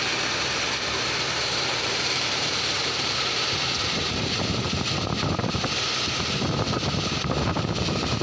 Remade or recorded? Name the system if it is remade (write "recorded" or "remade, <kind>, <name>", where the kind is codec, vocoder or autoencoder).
remade, vocoder, BigVGAN v2